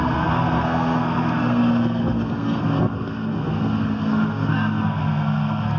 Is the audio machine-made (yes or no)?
yes